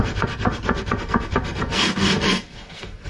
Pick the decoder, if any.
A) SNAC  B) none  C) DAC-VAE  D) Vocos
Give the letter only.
A